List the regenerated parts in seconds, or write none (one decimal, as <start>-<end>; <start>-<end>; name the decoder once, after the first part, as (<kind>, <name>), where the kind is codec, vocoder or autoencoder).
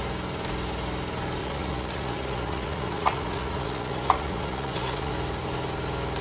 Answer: 1.4-5.1 (vocoder, Vocos)